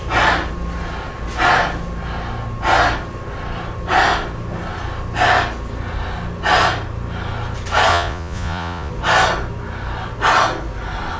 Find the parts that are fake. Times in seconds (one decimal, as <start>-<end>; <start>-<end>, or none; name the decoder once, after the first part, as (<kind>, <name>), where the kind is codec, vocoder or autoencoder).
7.9-8.9 (vocoder, Vocos)